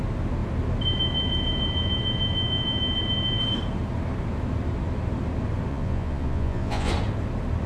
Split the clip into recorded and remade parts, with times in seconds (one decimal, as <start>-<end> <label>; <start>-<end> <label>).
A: 0.0-5.7 recorded; 5.7-6.9 remade; 6.9-7.7 recorded